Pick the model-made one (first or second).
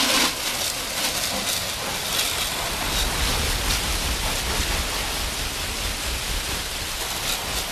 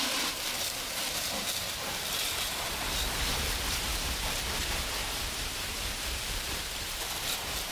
second